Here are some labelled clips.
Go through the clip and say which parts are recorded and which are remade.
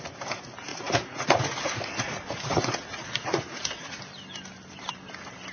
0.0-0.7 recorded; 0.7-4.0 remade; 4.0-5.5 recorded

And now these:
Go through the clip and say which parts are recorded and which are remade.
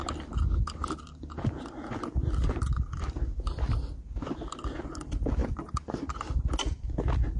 0.0-7.4 recorded